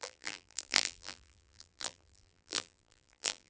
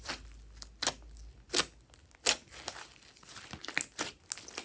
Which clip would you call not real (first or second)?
first